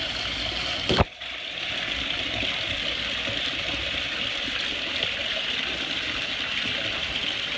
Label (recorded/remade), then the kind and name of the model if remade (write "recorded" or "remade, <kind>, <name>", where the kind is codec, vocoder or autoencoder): recorded